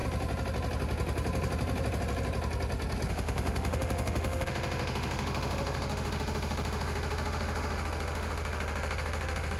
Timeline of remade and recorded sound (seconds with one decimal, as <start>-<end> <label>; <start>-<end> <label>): 0.0-3.1 recorded; 3.1-9.6 remade